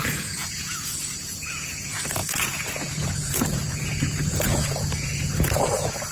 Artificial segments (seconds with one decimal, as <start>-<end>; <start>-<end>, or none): 0.0-6.1